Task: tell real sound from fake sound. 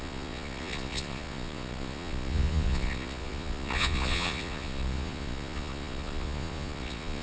fake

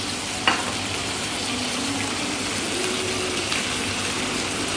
real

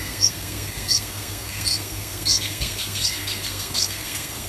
fake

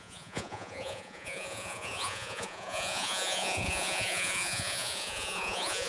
fake